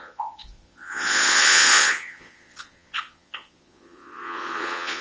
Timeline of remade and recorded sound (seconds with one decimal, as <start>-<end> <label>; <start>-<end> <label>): 0.0-5.0 remade

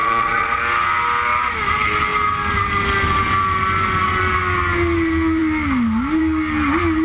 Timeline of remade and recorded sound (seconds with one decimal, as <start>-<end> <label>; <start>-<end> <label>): 0.0-0.6 remade; 0.6-7.0 recorded